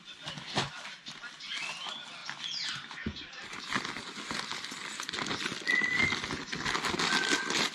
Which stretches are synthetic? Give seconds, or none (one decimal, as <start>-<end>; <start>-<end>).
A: none